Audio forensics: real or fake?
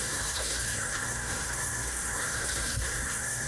fake